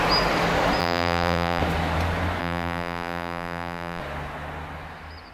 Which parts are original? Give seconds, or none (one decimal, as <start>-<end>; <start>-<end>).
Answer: 0.0-0.8; 1.6-2.4; 4.0-5.3